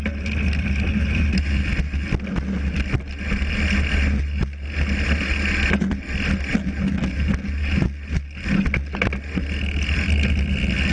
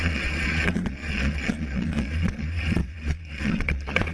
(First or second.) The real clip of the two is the first